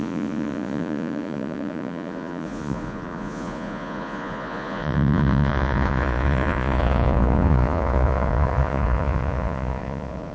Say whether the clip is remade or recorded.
remade